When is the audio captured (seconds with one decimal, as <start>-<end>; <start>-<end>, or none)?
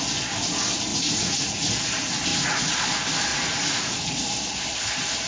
0.0-0.9; 1.7-2.3; 2.8-3.3; 4.1-5.3